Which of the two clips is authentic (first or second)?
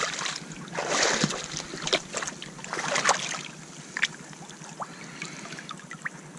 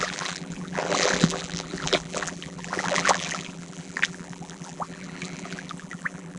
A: first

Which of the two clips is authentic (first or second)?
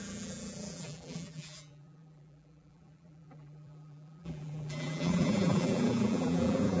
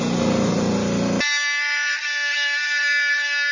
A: second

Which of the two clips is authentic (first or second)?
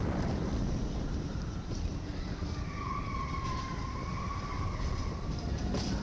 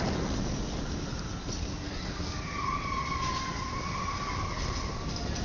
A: second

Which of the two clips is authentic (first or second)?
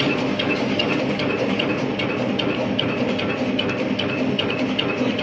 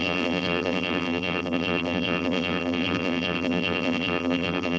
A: first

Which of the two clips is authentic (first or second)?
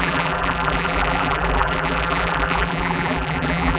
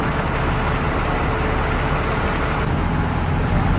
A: second